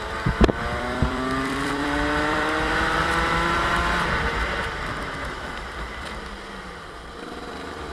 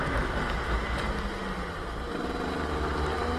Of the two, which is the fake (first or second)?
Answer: first